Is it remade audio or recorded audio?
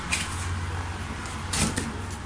recorded